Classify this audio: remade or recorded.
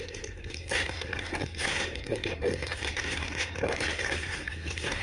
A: remade